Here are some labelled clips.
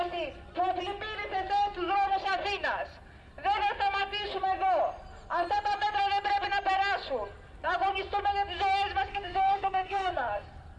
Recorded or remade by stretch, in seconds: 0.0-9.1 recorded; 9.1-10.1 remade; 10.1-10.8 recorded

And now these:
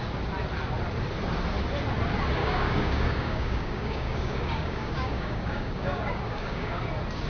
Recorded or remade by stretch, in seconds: 0.0-2.4 recorded; 2.4-6.8 remade; 6.8-7.3 recorded

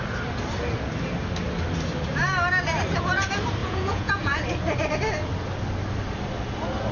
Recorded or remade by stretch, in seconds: 0.0-3.6 recorded; 3.6-4.4 remade; 4.4-6.9 recorded

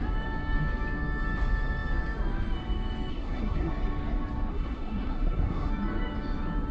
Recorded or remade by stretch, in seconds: 0.0-3.1 recorded; 3.1-3.7 remade; 3.7-4.5 recorded; 4.5-5.7 remade; 5.7-6.7 recorded